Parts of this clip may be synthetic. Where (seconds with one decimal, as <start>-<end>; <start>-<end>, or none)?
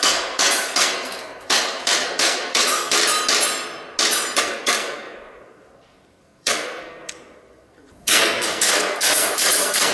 0.0-3.0; 4.4-9.9